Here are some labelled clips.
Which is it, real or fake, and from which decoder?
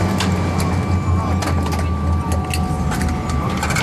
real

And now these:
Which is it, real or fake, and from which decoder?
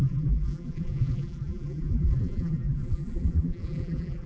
fake, vocoder, BigVGAN v2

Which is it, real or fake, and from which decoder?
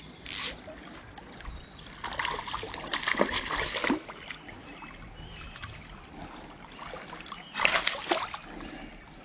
fake, vocoder, BigVGAN v2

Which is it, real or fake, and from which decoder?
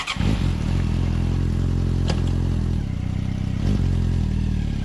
real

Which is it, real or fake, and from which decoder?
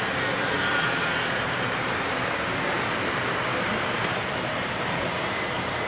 fake, vocoder, BigVGAN v2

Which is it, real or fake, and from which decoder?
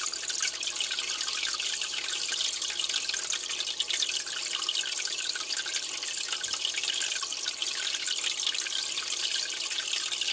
real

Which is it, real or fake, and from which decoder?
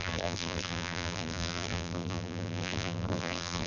fake, vocoder, BigVGAN v2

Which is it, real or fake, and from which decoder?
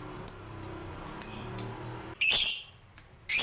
fake, vocoder, BigVGAN v2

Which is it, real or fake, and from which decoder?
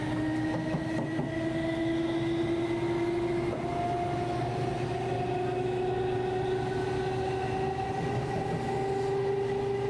real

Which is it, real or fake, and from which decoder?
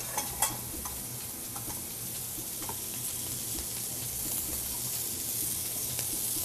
real